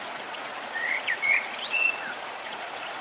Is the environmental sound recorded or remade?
remade